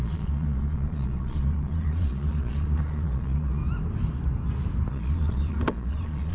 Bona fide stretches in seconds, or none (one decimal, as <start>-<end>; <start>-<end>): 3.6-4.9